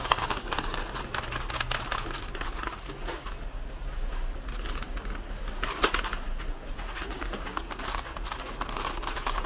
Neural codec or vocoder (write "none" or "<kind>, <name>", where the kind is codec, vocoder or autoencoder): none